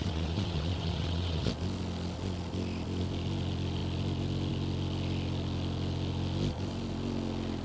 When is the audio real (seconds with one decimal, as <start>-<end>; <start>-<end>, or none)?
1.5-7.6